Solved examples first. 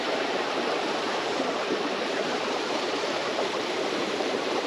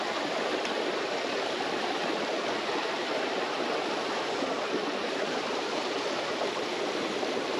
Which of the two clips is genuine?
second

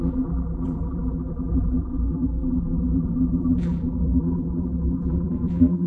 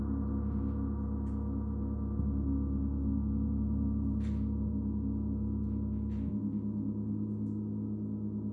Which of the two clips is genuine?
second